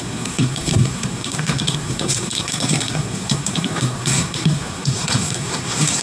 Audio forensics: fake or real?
fake